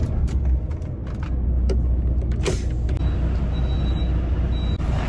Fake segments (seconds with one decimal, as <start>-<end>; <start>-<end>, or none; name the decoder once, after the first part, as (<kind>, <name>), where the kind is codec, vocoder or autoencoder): none